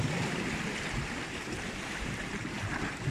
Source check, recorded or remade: recorded